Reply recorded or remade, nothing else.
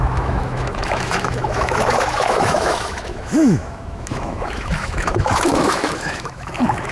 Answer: remade